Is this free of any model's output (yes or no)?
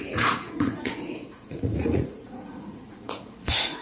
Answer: no